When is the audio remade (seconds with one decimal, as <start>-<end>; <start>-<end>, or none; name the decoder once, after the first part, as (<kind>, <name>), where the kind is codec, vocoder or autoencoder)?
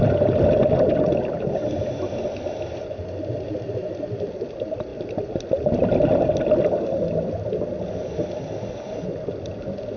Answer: none